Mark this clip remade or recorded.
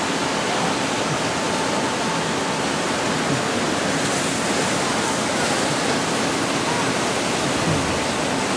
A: recorded